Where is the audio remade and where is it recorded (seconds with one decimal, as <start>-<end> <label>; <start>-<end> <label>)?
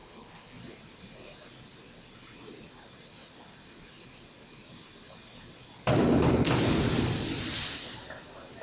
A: 0.0-0.6 remade; 0.6-8.6 recorded